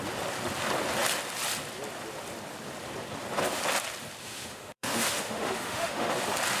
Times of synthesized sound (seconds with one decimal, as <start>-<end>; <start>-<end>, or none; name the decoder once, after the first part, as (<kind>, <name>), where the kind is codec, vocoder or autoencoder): 4.2-6.1 (autoencoder, DAC-VAE)